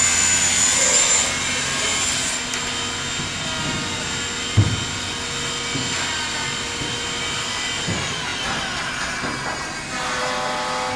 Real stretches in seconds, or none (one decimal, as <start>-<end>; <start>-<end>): 0.0-11.0